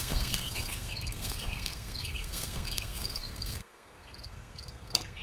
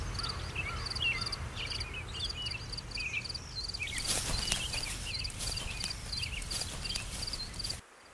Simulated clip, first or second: first